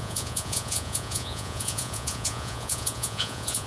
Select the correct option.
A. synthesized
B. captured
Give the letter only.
A